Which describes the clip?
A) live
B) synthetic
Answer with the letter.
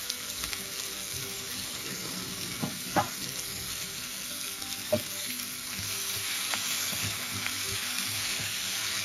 B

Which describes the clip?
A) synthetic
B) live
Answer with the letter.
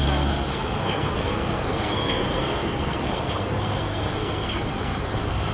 A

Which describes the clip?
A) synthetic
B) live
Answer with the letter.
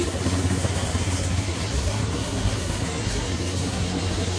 A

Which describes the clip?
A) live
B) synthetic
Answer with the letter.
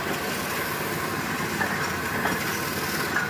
A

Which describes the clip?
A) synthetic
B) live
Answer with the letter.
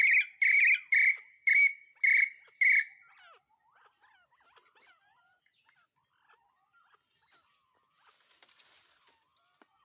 B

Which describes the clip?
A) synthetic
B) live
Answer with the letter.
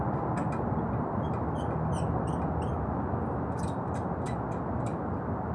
B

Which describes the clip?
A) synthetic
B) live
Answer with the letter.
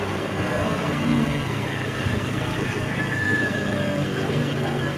A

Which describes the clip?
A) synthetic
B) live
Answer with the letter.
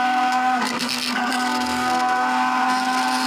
A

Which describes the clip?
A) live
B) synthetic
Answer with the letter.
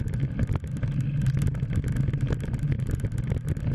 A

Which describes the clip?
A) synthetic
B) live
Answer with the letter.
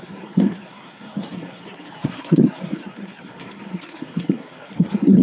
A